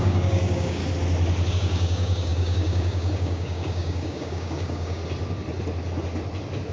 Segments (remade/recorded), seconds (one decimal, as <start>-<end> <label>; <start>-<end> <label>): 0.0-0.8 remade; 0.8-1.5 recorded; 1.5-5.0 remade; 5.0-6.7 recorded